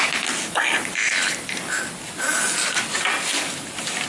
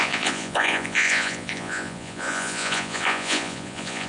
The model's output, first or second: second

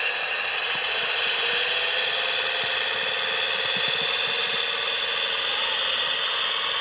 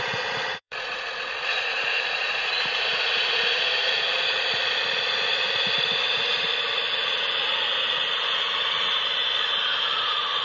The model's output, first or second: second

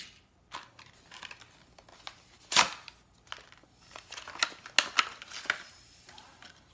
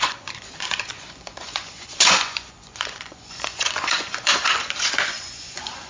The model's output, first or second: second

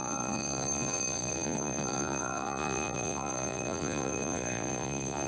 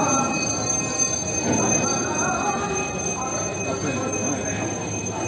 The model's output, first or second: first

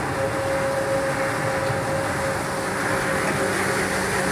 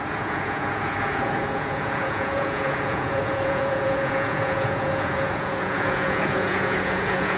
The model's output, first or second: second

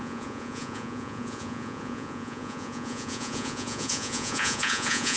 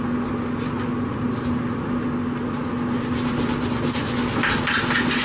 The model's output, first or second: first